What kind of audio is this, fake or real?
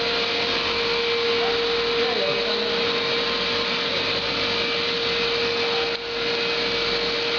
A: real